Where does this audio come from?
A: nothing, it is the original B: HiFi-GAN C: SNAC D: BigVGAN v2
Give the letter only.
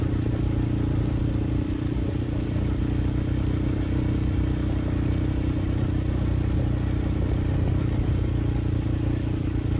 A